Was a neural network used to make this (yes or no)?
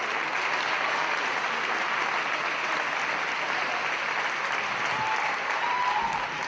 no